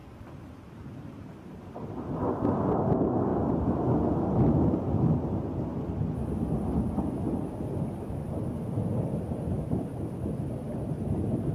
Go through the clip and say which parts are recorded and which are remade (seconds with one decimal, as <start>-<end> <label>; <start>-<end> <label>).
0.0-2.1 remade; 2.1-11.5 recorded